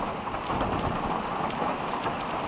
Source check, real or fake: real